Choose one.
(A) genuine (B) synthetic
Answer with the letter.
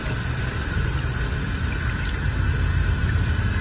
B